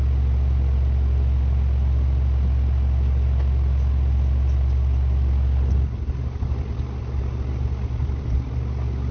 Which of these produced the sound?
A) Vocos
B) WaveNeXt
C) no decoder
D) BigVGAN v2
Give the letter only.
C